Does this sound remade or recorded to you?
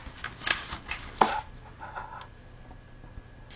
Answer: recorded